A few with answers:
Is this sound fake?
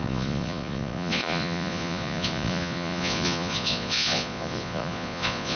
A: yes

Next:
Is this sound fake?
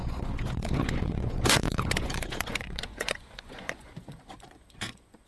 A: yes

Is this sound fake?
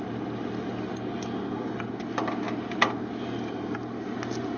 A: no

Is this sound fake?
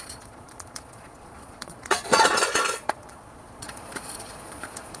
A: yes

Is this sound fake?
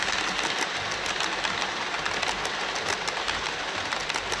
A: no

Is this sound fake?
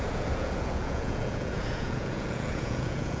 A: yes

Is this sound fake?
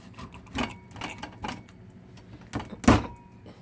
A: no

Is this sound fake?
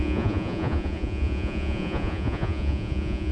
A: yes